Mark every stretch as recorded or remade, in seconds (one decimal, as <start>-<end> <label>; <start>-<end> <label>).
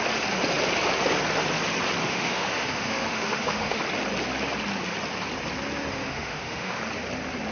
0.0-2.0 recorded; 2.0-3.8 remade; 3.8-5.9 recorded; 5.9-6.8 remade; 6.8-7.5 recorded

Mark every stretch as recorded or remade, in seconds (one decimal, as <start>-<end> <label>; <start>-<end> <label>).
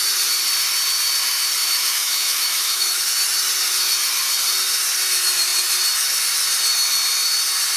0.0-1.6 recorded; 1.6-3.0 remade; 3.0-7.8 recorded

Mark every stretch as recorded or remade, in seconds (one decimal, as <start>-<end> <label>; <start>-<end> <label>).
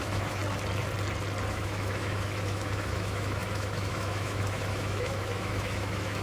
0.0-0.4 remade; 0.4-1.5 recorded; 1.5-6.2 remade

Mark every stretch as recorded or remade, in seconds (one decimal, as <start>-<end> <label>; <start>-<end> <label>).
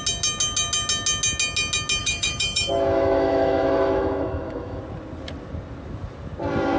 0.0-2.0 recorded; 2.0-4.8 remade; 4.8-6.8 recorded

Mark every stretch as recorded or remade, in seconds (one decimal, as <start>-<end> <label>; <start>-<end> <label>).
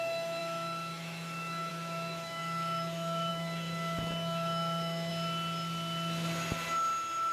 0.0-5.1 remade; 5.1-7.3 recorded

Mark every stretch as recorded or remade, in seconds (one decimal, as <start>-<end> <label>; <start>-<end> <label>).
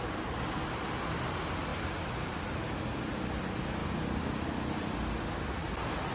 0.0-6.1 recorded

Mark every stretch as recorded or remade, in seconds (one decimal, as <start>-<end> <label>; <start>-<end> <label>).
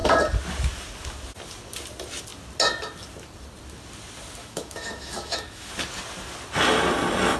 0.0-4.4 recorded; 4.4-5.7 remade; 5.7-7.4 recorded